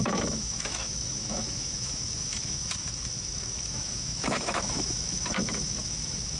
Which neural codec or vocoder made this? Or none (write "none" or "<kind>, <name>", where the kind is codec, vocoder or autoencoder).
autoencoder, DAC-VAE